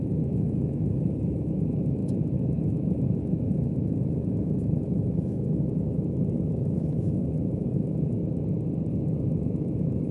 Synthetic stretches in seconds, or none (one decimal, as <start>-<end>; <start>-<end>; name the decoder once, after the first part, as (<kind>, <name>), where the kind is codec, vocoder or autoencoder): 0.0-8.2 (autoencoder, DAC-VAE); 8.9-10.1